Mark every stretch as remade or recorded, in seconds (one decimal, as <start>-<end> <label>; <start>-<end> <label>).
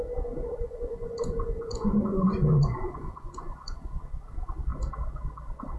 0.0-0.6 recorded; 0.6-4.0 remade; 4.0-5.8 recorded